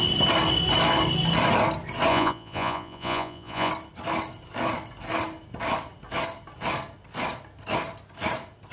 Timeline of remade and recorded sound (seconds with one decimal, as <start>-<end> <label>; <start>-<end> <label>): 0.0-2.1 recorded; 2.1-3.7 remade; 3.7-8.7 recorded